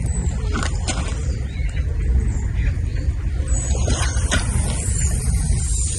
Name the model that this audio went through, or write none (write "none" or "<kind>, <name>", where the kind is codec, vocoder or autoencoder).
none